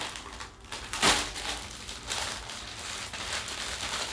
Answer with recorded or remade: recorded